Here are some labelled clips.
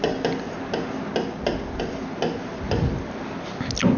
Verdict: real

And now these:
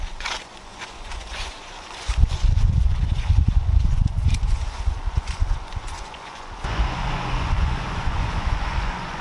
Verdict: fake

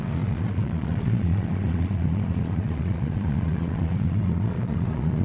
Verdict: fake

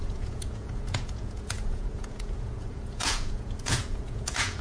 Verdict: fake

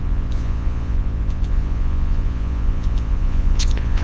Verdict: fake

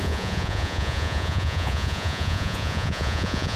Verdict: fake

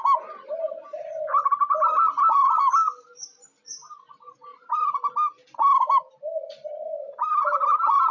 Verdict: real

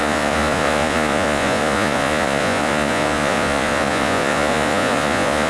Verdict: fake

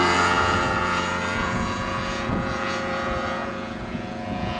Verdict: fake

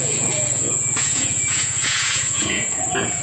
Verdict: fake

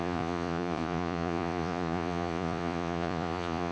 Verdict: fake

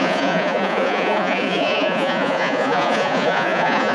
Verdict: fake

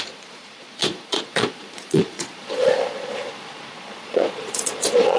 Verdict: fake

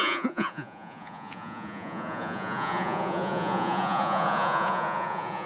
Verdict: fake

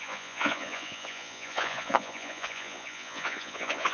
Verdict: fake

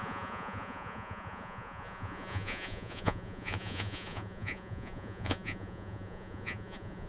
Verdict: fake